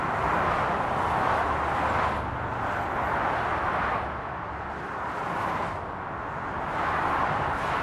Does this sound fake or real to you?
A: real